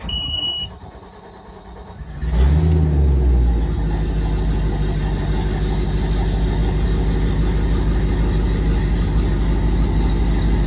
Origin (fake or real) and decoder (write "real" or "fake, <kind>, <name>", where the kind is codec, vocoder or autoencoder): real